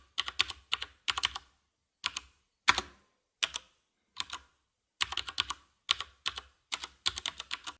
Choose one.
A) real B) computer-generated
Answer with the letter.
A